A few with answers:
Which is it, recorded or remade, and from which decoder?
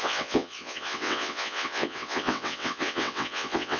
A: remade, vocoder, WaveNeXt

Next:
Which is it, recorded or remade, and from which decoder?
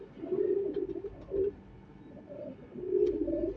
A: recorded